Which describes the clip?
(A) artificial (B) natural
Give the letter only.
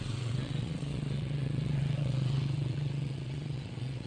A